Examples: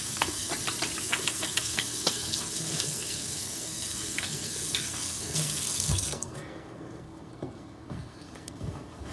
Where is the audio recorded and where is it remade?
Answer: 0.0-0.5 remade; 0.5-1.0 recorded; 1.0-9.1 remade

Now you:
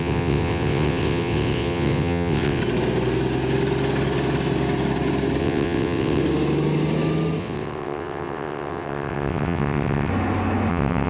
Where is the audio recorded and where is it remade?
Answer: 0.0-2.6 remade; 2.6-5.4 recorded; 5.4-6.2 remade; 6.2-7.4 recorded; 7.4-10.1 remade; 10.1-10.7 recorded; 10.7-11.1 remade

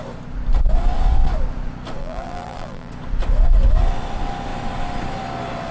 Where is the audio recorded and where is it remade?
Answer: 0.0-2.0 recorded; 2.0-2.9 remade; 2.9-5.7 recorded

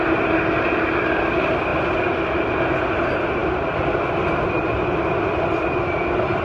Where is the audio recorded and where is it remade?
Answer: 0.0-6.4 recorded